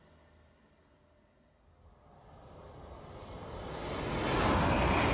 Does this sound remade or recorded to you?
recorded